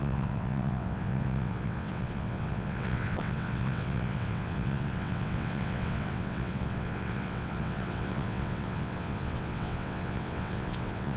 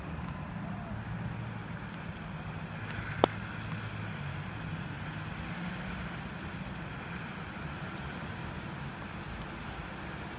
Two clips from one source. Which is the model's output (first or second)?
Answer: first